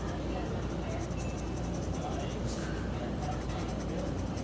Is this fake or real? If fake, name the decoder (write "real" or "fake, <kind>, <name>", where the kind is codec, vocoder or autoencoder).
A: real